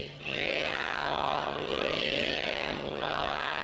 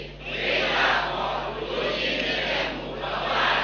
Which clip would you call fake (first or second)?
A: first